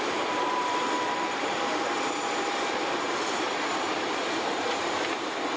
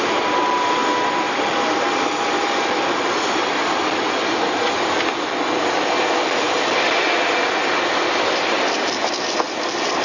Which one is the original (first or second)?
second